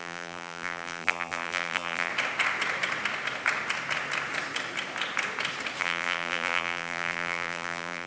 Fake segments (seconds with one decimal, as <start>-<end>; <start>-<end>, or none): 0.0-2.1; 5.8-8.1